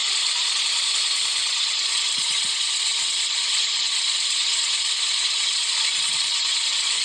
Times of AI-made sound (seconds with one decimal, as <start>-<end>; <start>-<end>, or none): 0.0-7.0